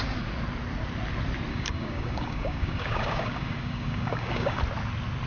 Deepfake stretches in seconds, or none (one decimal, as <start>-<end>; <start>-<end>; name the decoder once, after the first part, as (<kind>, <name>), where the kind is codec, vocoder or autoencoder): 1.5-4.6 (codec, DAC)